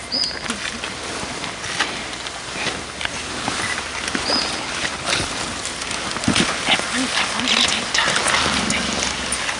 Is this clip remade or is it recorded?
recorded